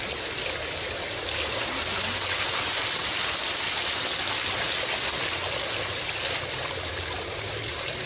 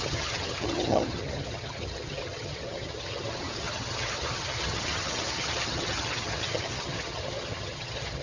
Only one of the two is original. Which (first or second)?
first